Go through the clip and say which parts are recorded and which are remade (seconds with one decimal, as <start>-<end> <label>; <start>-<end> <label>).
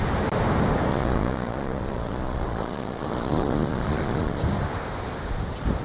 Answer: 0.0-0.9 recorded; 0.9-4.4 remade; 4.4-5.8 recorded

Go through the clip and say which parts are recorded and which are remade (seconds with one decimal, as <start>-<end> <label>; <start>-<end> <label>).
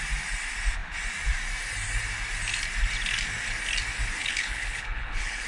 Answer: 0.0-4.2 recorded; 4.2-5.5 remade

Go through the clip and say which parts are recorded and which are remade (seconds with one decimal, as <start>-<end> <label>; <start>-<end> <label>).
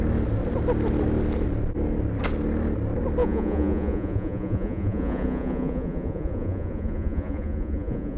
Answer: 0.0-3.2 recorded; 3.2-8.2 remade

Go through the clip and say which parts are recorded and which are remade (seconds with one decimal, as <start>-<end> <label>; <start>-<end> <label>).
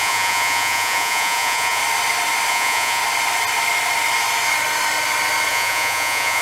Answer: 0.0-1.8 remade; 1.8-2.5 recorded; 2.5-3.0 remade; 3.0-5.5 recorded; 5.5-6.4 remade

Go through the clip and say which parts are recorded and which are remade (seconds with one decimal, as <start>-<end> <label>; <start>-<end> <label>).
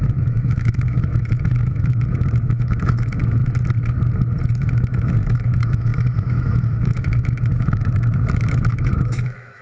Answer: 0.0-3.4 remade; 3.4-4.5 recorded; 4.5-9.6 remade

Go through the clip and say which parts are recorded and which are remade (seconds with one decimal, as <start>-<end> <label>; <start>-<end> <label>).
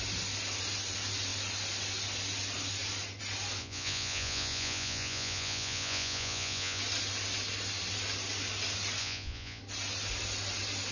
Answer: 0.0-3.6 recorded; 3.6-6.8 remade; 6.8-9.0 recorded; 9.0-9.6 remade; 9.6-10.9 recorded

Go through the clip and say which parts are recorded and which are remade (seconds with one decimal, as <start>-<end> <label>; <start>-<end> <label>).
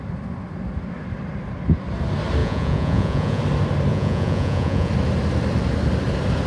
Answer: 0.0-2.4 recorded; 2.4-3.4 remade; 3.4-3.9 recorded; 3.9-4.9 remade; 4.9-6.5 recorded